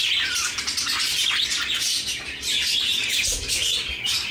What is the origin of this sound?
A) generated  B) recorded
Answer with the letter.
B